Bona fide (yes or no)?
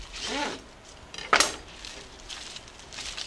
no